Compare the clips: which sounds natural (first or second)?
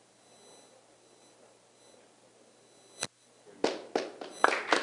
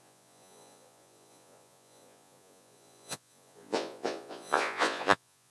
first